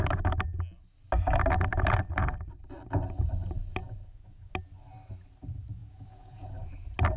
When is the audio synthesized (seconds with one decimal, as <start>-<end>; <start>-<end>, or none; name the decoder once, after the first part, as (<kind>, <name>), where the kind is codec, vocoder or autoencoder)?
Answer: 3.8-4.5 (vocoder, Vocos); 5.8-6.7